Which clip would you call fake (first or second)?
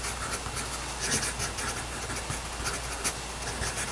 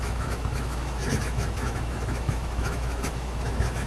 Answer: second